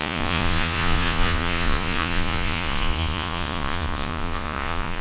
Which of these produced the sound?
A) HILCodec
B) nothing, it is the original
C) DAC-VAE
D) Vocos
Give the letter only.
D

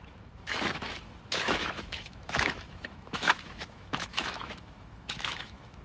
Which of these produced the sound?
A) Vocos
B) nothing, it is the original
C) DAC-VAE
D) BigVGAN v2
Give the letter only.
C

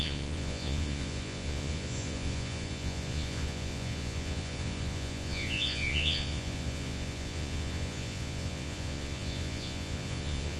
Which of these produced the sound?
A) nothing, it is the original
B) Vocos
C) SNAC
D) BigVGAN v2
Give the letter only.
B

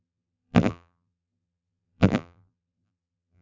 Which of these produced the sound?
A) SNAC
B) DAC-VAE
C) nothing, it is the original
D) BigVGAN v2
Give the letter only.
D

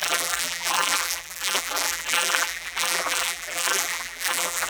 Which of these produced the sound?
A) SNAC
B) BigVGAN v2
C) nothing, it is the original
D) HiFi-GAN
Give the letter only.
B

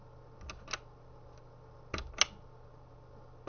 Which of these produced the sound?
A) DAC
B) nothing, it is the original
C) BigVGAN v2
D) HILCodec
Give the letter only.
B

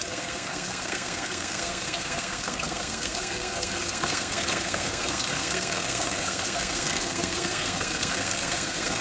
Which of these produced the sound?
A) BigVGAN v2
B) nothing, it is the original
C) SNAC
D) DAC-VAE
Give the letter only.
C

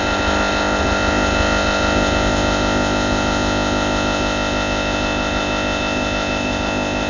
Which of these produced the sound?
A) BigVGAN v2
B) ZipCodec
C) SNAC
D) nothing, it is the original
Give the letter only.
B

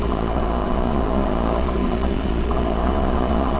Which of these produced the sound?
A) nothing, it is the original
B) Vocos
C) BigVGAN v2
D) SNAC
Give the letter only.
B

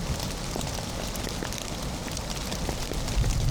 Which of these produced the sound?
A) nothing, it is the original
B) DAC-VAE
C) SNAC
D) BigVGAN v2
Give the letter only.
A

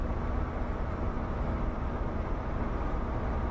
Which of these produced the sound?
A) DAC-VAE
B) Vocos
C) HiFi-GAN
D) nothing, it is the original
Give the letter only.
D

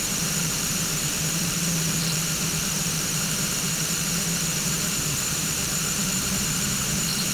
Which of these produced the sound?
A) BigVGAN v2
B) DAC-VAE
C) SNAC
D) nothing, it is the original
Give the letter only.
A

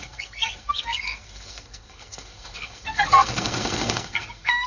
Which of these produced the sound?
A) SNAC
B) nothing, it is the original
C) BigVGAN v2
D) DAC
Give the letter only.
A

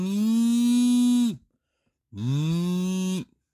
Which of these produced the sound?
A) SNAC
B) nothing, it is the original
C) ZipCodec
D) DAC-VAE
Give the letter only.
B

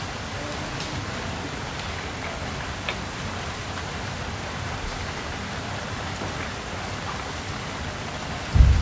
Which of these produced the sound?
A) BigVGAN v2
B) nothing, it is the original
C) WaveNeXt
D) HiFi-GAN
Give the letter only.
B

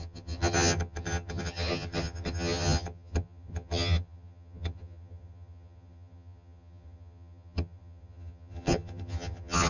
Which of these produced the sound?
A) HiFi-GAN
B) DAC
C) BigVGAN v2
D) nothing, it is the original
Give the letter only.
A